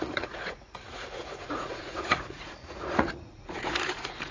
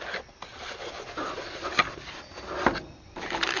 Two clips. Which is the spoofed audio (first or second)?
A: first